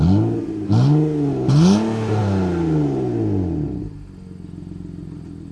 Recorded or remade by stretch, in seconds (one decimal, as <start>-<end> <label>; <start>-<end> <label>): 0.0-5.5 recorded